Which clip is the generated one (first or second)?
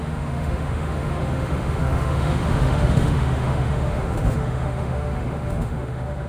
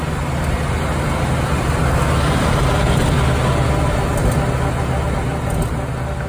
first